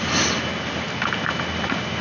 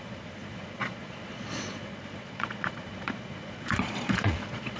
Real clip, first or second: first